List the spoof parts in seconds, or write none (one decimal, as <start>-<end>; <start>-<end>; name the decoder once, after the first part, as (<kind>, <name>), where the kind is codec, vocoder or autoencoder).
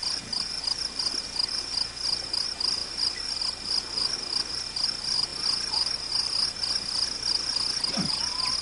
none